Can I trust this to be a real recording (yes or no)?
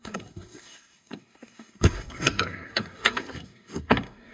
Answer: no